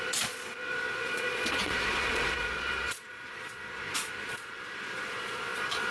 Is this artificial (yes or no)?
yes